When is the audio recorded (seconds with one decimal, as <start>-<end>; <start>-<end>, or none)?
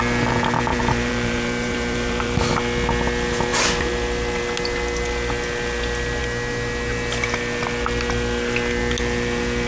0.0-0.7; 2.5-9.7